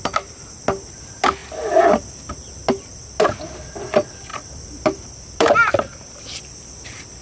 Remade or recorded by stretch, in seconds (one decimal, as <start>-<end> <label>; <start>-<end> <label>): 0.0-1.4 recorded; 1.4-2.2 remade; 2.2-4.3 recorded; 4.3-6.1 remade; 6.1-7.2 recorded